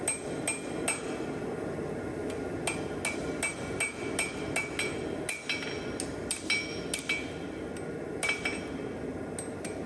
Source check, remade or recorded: recorded